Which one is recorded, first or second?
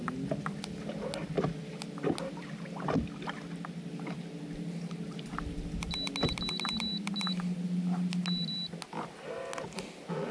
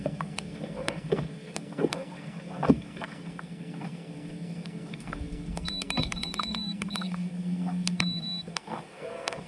first